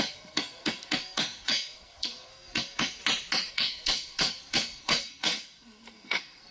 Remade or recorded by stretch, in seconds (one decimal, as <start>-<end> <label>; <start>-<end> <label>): 0.0-3.0 remade; 3.0-3.5 recorded; 3.5-6.5 remade